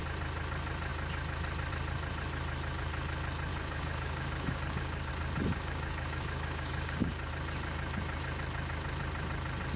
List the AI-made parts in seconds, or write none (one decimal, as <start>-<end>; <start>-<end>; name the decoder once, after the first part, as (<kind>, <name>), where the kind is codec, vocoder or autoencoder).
3.5-5.1 (codec, DAC); 5.5-7.3